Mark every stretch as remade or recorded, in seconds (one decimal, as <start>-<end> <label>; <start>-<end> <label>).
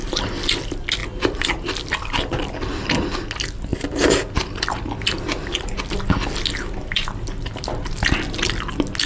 0.0-1.0 recorded; 1.0-2.5 remade; 2.5-3.7 recorded; 3.7-5.8 remade; 5.8-9.1 recorded